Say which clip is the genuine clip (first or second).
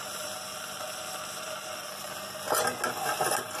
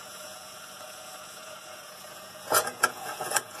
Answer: first